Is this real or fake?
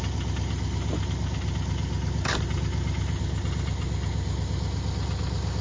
real